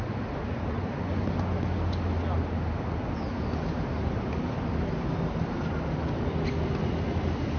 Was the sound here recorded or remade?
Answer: recorded